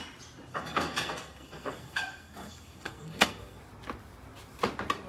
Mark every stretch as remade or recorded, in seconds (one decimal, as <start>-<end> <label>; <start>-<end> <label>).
0.0-0.5 recorded; 0.5-3.6 remade; 3.6-5.1 recorded